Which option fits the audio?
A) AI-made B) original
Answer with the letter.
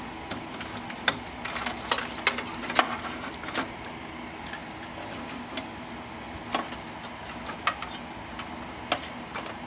B